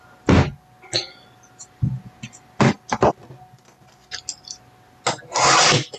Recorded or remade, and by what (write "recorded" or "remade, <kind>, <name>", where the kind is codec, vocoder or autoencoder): recorded